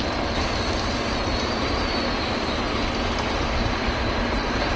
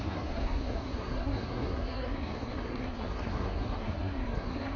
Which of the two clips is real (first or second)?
first